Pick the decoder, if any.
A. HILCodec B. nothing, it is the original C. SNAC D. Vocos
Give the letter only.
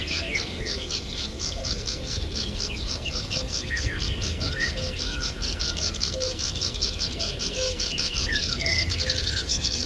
C